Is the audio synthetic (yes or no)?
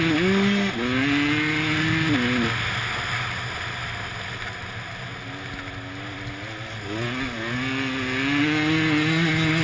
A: no